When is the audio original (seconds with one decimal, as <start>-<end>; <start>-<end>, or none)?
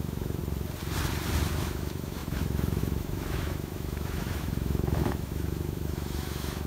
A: 0.4-1.5